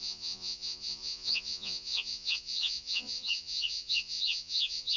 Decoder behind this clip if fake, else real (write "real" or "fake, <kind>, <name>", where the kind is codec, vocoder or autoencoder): fake, vocoder, Vocos